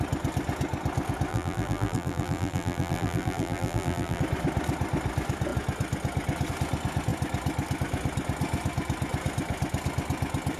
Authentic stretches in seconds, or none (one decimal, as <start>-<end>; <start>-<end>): 0.0-1.3; 4.2-10.6